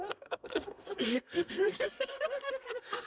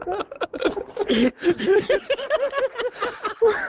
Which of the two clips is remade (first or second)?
first